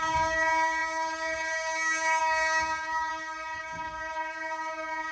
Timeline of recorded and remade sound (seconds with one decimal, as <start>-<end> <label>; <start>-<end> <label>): 0.0-3.1 remade; 3.1-3.6 recorded; 3.6-5.1 remade